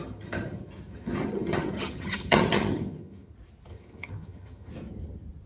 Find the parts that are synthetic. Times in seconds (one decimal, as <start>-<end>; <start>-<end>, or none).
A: 0.0-3.3; 3.7-4.7